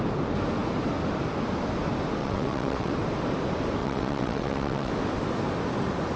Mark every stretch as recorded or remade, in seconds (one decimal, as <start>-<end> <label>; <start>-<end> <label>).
0.0-2.2 recorded; 2.2-2.9 remade; 2.9-3.8 recorded; 3.8-4.9 remade; 4.9-6.2 recorded